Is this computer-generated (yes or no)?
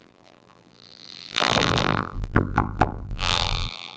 yes